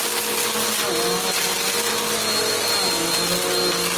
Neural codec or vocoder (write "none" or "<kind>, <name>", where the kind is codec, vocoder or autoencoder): none